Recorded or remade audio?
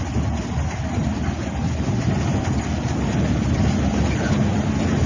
recorded